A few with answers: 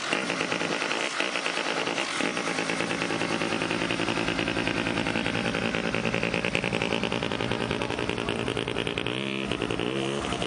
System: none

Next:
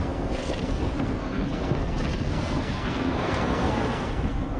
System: codec, SNAC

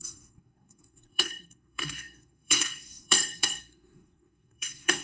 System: codec, SNAC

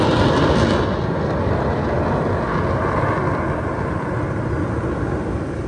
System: none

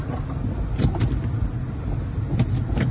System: none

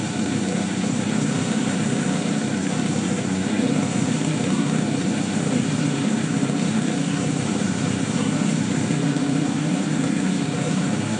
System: codec, SNAC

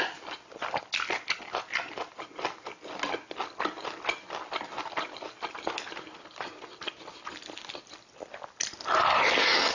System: none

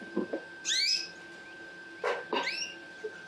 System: none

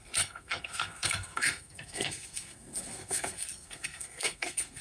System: codec, SNAC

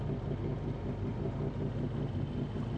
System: none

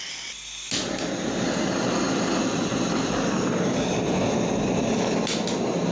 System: none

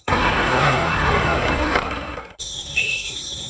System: codec, SNAC